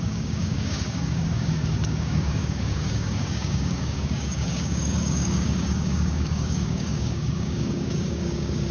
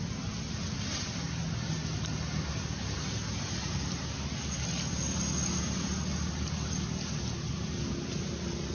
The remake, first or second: first